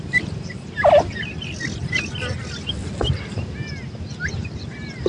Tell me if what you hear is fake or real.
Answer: real